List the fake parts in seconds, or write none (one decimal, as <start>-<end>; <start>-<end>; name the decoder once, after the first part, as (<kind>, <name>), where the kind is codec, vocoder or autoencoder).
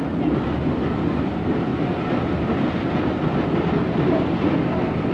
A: none